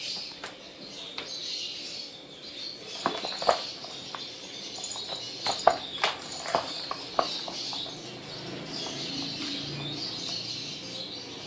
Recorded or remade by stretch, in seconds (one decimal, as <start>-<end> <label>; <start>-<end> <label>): 0.0-6.5 recorded; 6.5-7.3 remade; 7.3-11.5 recorded